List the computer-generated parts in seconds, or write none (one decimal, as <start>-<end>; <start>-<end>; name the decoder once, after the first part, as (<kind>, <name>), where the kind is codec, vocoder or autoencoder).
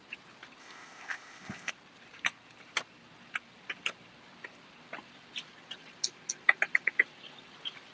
0.6-1.7 (codec, ZipCodec)